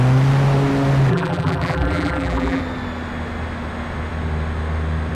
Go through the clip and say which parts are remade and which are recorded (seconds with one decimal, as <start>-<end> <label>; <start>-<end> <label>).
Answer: 0.0-1.1 recorded; 1.1-2.6 remade; 2.6-5.1 recorded